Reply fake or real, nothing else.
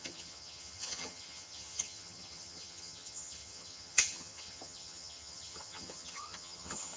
fake